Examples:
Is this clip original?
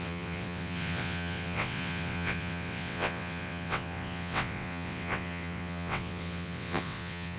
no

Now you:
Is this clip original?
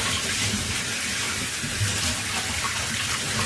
yes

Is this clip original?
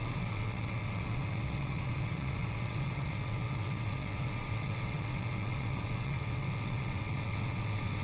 no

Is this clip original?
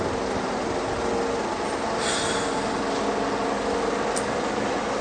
yes